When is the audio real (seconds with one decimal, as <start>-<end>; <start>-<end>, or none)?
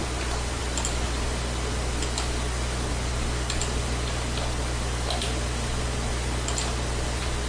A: 0.0-7.5